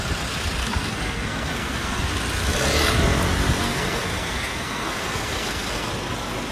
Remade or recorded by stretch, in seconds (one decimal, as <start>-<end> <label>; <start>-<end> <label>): 0.0-0.6 recorded; 0.6-2.0 remade; 2.0-3.6 recorded; 3.6-5.9 remade; 5.9-6.5 recorded